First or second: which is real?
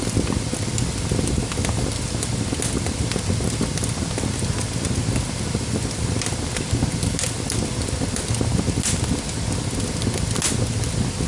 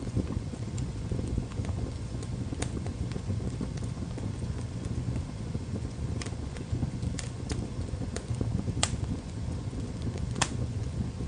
first